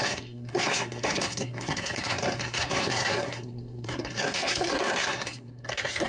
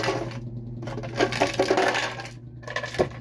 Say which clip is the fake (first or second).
first